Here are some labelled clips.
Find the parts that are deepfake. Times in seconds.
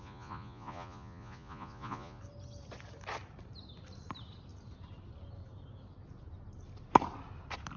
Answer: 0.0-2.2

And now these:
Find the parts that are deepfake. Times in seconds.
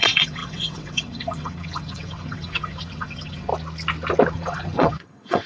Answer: 0.0-3.5; 4.3-5.5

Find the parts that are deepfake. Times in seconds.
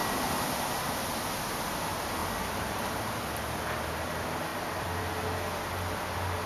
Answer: 0.0-0.6; 2.2-3.0; 4.5-5.0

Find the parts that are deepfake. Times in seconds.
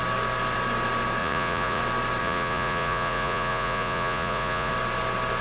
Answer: 1.2-1.8; 2.2-4.7